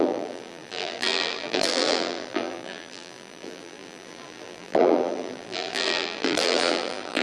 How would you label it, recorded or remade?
remade